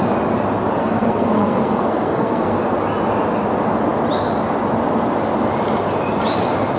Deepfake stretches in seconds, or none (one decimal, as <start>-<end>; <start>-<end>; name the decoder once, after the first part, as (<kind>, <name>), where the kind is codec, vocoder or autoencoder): 0.8-2.6 (codec, SNAC)